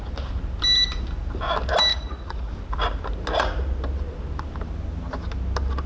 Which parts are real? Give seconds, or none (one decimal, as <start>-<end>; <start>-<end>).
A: 0.0-1.9; 2.5-5.9